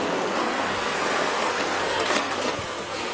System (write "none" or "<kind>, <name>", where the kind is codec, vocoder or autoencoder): codec, SNAC